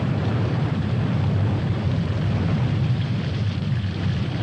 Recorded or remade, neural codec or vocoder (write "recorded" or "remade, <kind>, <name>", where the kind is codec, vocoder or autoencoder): remade, vocoder, BigVGAN v2